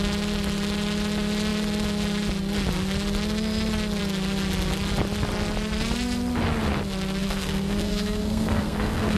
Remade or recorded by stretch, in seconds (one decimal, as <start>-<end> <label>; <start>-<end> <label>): 0.0-7.2 recorded; 7.2-9.2 remade